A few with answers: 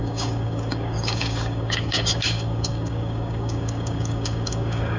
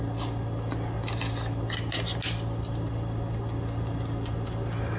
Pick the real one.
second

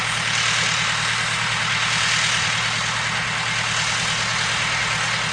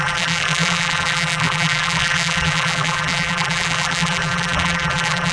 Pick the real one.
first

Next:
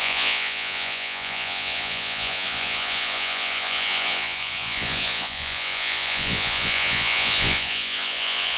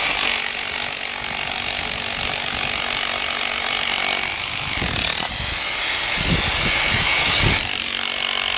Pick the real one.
second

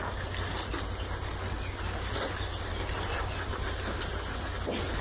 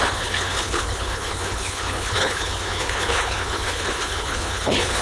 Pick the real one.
first